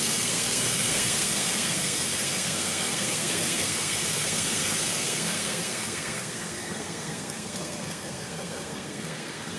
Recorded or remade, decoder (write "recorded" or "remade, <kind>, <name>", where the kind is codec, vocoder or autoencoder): remade, codec, SNAC